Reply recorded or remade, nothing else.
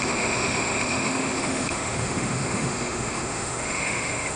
remade